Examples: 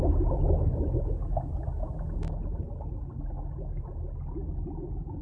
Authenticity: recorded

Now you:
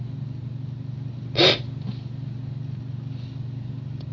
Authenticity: recorded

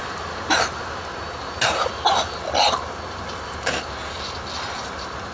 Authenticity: recorded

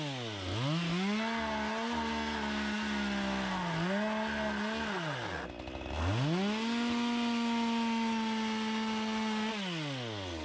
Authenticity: recorded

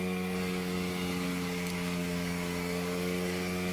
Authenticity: remade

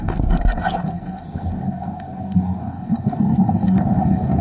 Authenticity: remade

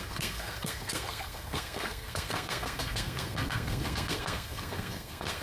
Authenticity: remade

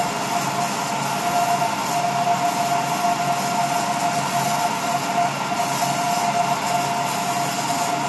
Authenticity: recorded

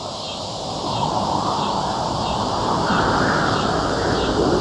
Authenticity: remade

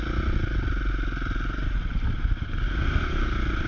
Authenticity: recorded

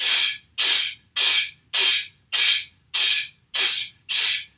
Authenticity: recorded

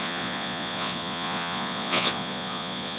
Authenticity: remade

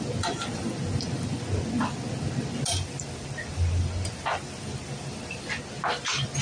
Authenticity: recorded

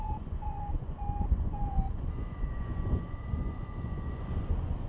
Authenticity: remade